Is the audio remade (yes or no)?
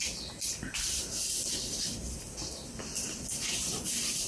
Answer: yes